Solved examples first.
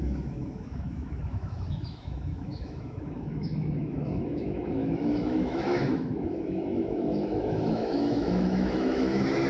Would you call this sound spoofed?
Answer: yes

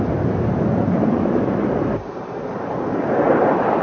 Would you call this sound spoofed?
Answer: yes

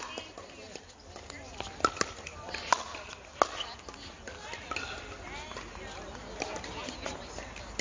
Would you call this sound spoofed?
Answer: no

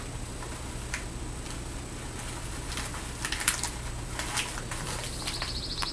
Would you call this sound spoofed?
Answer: no